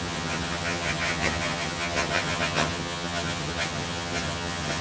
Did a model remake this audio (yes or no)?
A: yes